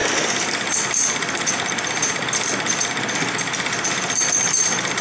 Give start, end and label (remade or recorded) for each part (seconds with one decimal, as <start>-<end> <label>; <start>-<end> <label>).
0.0-5.0 recorded